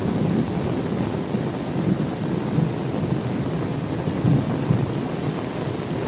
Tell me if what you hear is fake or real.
real